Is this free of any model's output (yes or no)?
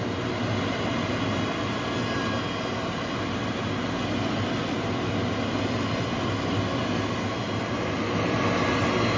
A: yes